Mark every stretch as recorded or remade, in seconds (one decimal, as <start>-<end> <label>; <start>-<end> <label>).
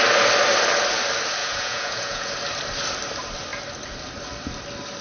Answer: 0.0-1.4 recorded; 1.4-2.3 remade; 2.3-5.0 recorded